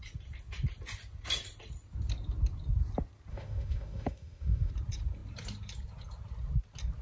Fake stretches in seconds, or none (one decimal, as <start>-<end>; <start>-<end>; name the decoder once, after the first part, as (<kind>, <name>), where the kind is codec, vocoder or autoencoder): 3.3-4.7 (autoencoder, DAC-VAE)